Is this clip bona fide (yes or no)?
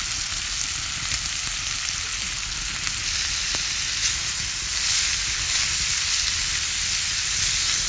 yes